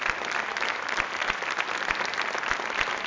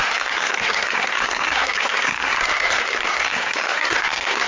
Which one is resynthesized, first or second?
second